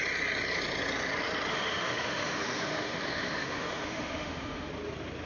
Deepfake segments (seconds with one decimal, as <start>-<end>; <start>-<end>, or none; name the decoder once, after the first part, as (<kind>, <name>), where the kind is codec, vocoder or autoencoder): 1.5-4.7 (autoencoder, DAC-VAE)